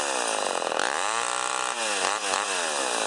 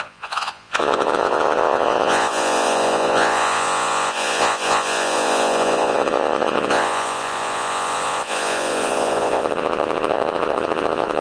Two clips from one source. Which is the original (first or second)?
first